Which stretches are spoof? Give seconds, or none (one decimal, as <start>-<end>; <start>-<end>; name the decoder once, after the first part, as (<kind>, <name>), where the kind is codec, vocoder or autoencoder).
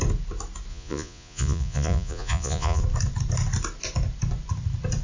0.7-2.8 (vocoder, Vocos)